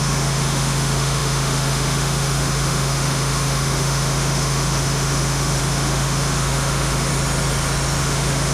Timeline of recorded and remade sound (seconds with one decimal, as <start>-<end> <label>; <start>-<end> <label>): 0.0-7.1 remade; 7.1-8.0 recorded; 8.0-8.5 remade